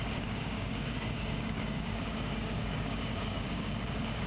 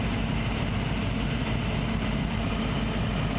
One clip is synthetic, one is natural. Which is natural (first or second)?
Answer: second